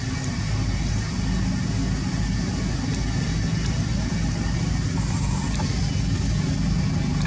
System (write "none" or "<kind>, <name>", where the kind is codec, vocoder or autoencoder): none